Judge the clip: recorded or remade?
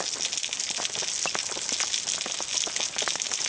recorded